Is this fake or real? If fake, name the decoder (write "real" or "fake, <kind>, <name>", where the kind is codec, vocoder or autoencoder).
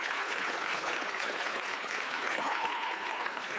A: fake, codec, HILCodec